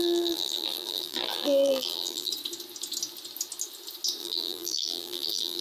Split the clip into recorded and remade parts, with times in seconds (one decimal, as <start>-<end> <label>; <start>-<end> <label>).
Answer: 0.0-2.3 remade; 2.3-4.2 recorded; 4.2-5.6 remade